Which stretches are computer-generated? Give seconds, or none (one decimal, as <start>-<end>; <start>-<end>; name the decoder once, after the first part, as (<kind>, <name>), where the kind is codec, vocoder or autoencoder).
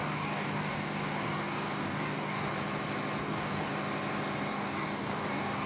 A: 0.0-2.5 (codec, DAC); 3.2-3.7; 4.5-5.7